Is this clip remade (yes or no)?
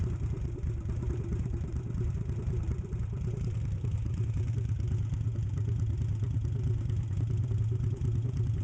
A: yes